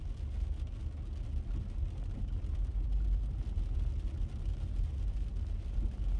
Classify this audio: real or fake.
real